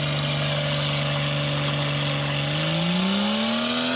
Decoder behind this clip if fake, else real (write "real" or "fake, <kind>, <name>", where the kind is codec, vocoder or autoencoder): real